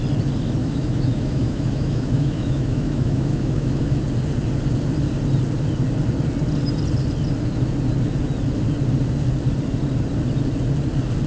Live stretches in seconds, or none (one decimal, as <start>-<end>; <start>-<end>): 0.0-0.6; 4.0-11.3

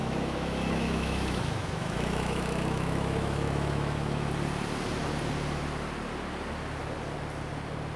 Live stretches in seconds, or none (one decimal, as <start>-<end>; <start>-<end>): 4.3-8.0

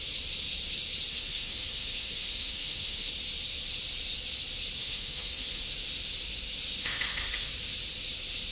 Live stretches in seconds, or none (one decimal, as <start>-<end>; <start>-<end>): 0.0-1.1; 3.1-4.8; 5.6-6.8; 7.5-8.5

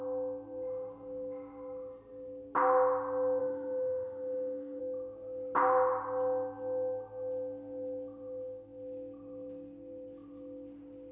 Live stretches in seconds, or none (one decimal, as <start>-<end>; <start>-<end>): 0.0-3.4; 4.8-11.1

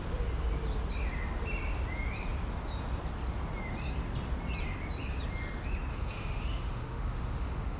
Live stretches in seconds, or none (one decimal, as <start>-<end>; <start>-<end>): 0.0-5.9

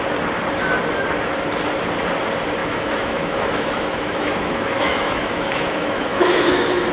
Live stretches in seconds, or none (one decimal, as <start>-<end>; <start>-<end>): 0.0-2.6

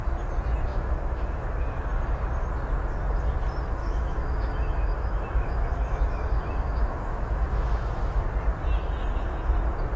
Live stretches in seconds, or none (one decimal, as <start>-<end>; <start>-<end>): 0.0-0.7; 1.8-3.8; 8.2-10.0

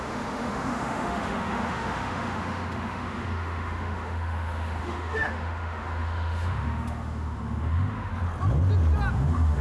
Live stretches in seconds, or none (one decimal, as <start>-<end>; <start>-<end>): 8.1-9.1